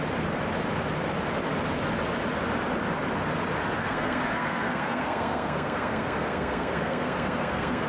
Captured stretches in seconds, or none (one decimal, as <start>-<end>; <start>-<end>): 0.0-3.8